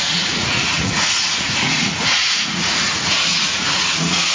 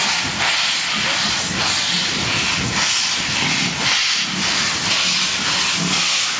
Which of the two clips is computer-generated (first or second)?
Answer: first